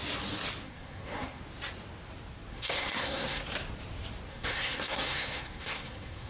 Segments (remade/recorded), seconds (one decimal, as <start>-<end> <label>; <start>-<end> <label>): 0.0-0.6 recorded; 0.6-1.4 remade; 1.4-2.5 recorded; 2.5-3.4 remade; 3.4-4.3 recorded; 4.3-6.3 remade